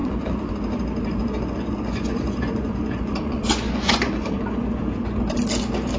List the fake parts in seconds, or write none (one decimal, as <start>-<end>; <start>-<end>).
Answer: 0.0-0.5; 1.2-4.8